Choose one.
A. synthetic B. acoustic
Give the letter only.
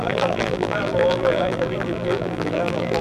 A